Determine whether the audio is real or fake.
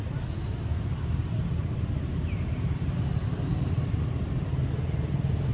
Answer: real